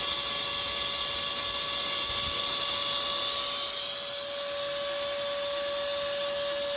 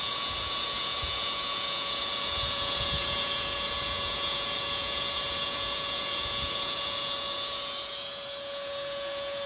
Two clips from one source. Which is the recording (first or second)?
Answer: first